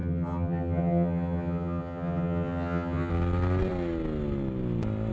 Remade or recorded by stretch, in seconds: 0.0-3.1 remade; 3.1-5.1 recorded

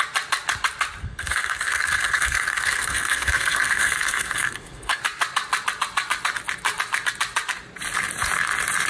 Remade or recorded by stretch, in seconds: 0.0-1.0 recorded; 1.0-5.0 remade; 5.0-8.9 recorded

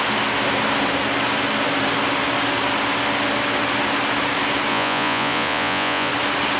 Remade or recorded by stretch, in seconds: 0.0-4.7 recorded; 4.7-6.1 remade; 6.1-6.6 recorded

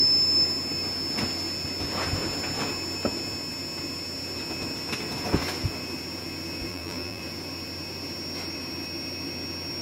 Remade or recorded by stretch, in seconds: 0.0-6.7 recorded; 6.7-7.2 remade; 7.2-9.8 recorded

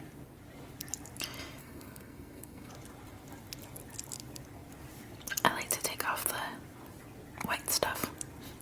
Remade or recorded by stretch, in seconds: 0.0-1.6 recorded; 1.6-2.7 remade; 2.7-8.6 recorded

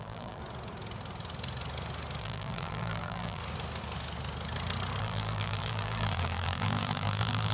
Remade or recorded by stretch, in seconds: 0.0-0.4 remade; 0.4-2.2 recorded; 2.2-3.4 remade; 3.4-5.0 recorded; 5.0-7.5 remade

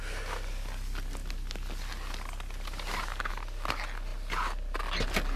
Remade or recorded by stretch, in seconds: 0.0-5.4 recorded

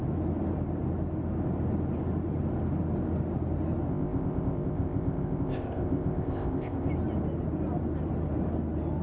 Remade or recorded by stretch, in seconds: 0.0-3.9 recorded; 3.9-6.9 remade; 6.9-9.0 recorded